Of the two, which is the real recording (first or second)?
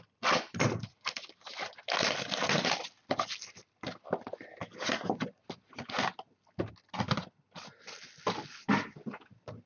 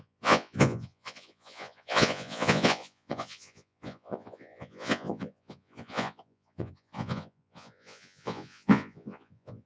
first